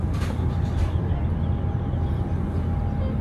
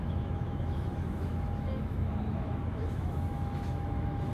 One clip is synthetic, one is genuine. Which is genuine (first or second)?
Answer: first